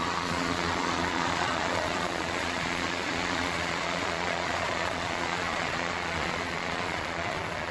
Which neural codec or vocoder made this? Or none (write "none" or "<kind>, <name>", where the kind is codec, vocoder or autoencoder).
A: vocoder, Vocos